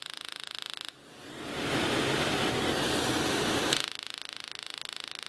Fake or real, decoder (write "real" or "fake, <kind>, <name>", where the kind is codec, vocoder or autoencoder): real